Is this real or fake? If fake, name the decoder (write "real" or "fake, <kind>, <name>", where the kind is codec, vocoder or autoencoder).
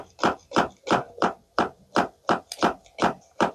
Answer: fake, vocoder, BigVGAN v2